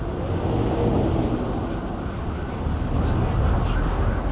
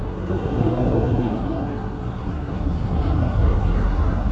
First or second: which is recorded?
first